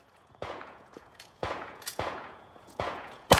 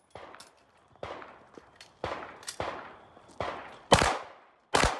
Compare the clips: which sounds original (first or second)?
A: second